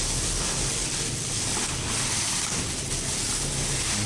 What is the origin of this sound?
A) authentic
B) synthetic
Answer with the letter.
A